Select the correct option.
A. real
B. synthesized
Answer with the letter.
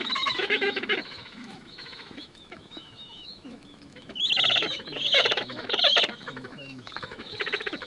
B